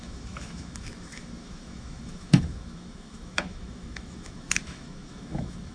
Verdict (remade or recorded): remade